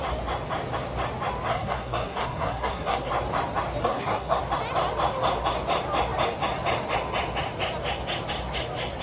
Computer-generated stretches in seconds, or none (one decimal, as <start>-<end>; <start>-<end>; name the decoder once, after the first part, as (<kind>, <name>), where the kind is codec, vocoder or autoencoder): 1.5-3.1 (codec, SNAC); 3.8-4.4